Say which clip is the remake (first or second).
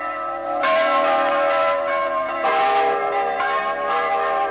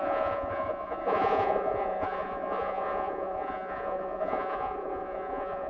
second